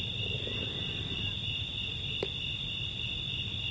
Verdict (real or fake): real